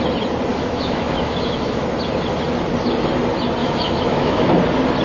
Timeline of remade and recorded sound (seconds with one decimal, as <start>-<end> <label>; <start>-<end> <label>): 0.0-0.5 recorded; 0.5-1.8 remade; 1.8-3.6 recorded; 3.6-4.5 remade; 4.5-5.0 recorded